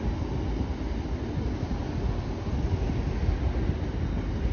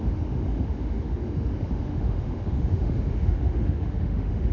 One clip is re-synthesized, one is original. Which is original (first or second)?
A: first